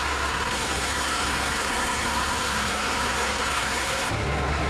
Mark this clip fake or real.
fake